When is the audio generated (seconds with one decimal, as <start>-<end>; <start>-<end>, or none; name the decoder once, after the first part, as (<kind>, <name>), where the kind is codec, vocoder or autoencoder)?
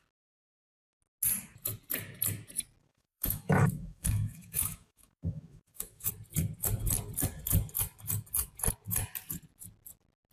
2.8-6.1 (autoencoder, DAC-VAE)